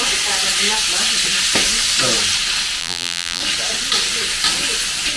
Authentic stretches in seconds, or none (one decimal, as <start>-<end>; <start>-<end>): 0.0-2.8; 3.4-5.2